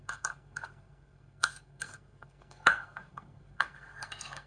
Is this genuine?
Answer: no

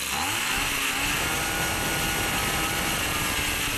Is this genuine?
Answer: yes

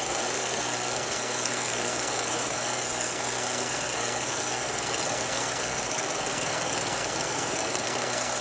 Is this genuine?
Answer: no